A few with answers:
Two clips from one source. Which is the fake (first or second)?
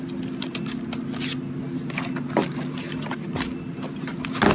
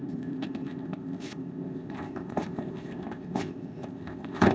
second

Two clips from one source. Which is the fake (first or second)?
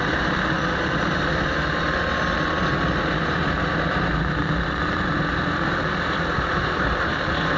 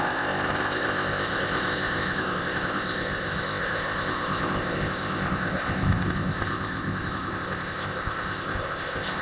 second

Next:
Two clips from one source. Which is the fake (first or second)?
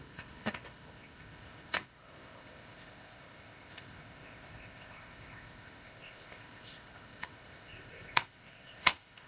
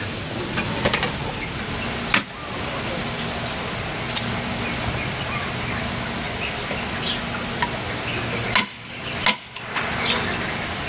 first